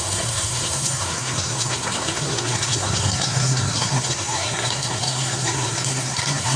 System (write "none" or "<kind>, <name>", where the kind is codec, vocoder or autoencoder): codec, SNAC